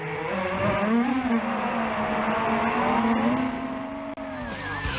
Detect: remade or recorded recorded